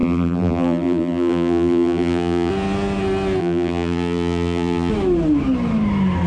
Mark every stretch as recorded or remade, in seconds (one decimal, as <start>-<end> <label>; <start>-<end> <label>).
0.0-2.5 remade; 2.5-3.4 recorded; 3.4-4.9 remade; 4.9-6.3 recorded